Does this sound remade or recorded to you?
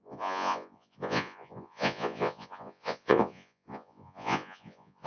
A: remade